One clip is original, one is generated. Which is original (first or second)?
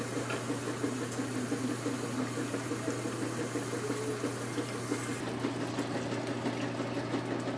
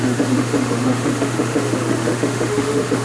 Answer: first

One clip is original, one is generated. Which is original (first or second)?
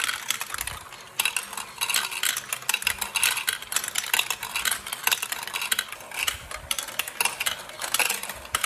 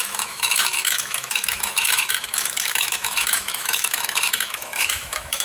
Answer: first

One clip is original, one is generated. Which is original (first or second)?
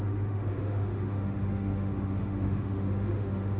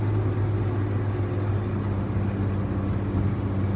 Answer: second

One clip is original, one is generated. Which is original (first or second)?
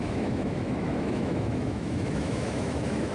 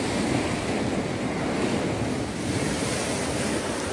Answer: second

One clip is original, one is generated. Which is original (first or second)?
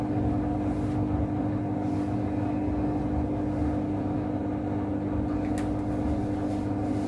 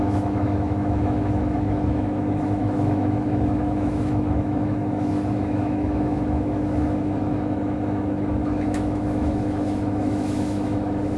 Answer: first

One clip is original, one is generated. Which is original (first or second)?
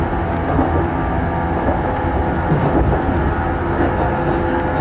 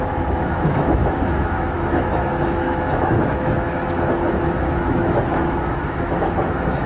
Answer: first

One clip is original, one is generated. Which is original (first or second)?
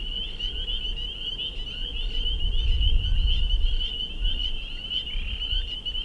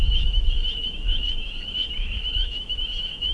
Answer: first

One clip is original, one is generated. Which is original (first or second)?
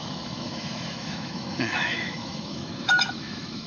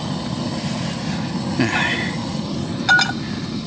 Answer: second